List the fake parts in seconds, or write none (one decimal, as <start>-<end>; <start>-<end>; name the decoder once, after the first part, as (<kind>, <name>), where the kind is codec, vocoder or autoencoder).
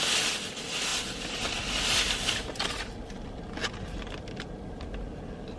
none